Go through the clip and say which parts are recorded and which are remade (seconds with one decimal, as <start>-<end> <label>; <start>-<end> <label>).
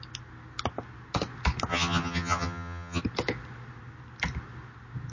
0.0-1.7 recorded; 1.7-3.0 remade; 3.0-5.1 recorded